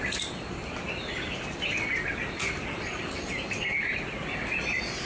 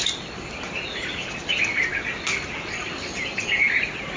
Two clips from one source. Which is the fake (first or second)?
second